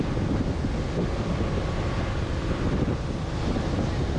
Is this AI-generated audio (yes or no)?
no